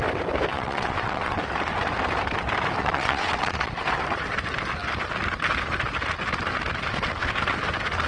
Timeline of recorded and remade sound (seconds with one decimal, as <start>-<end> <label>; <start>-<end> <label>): 0.0-0.5 recorded; 0.5-1.4 remade; 1.4-2.8 recorded; 2.8-3.7 remade; 3.7-8.1 recorded